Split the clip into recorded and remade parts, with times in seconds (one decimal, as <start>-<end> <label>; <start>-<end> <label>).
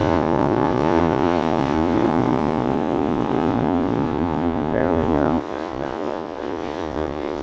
0.0-7.4 remade